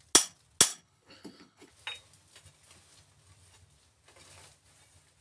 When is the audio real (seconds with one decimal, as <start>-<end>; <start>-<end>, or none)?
0.0-0.7; 1.7-5.2